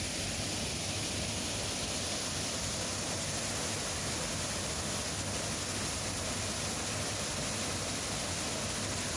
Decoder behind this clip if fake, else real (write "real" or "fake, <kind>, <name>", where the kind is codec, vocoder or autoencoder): real